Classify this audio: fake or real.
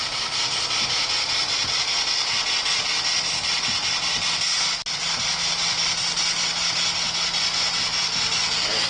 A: real